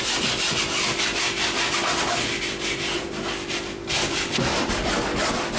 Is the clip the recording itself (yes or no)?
yes